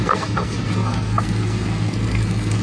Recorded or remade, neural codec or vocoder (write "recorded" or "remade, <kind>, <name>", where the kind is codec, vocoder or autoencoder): remade, codec, SNAC